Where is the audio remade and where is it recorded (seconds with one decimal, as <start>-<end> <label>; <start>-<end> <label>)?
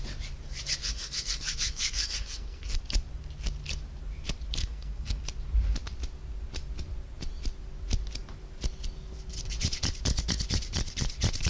0.0-0.8 recorded; 0.8-2.8 remade; 2.8-4.6 recorded; 4.6-5.2 remade; 5.2-11.5 recorded